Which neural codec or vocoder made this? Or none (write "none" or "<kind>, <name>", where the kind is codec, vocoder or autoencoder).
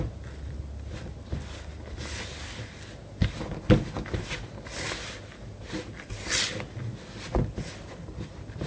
none